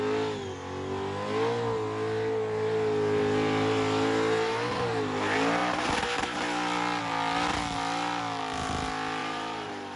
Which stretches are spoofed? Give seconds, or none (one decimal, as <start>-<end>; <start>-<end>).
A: 9.2-10.0